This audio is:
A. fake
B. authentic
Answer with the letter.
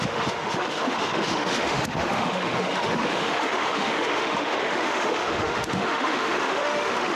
A